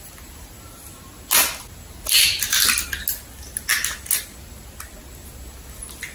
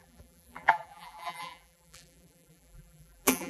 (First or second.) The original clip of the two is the first